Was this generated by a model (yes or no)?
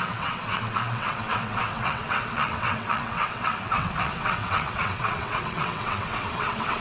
yes